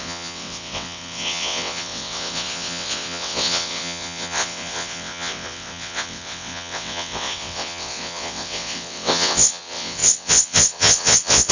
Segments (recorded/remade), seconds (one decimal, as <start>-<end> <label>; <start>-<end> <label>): 0.0-11.5 remade